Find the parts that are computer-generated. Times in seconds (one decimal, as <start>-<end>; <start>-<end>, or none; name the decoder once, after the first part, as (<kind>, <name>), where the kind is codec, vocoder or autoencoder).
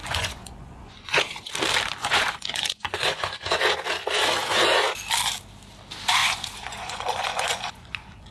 0.0-1.2 (vocoder, Vocos); 2.0-3.6; 6.2-8.3